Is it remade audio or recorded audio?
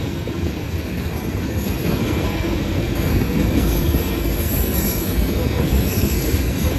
remade